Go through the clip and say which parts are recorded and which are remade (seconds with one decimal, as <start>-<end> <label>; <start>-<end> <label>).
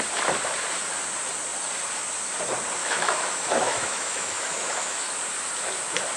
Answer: 0.0-2.8 recorded; 2.8-5.1 remade; 5.1-6.2 recorded